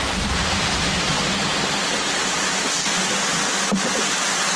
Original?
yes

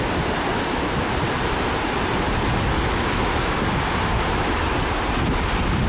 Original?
yes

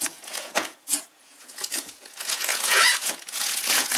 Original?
no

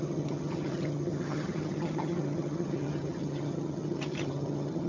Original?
no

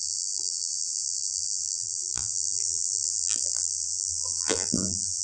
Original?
no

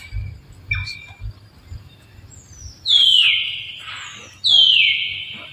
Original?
yes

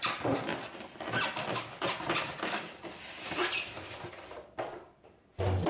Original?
no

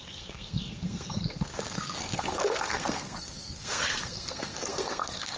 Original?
no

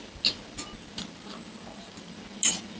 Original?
yes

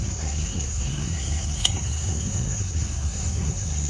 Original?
no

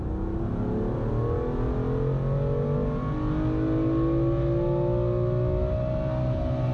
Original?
yes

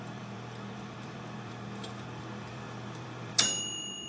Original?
no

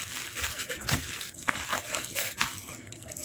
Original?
no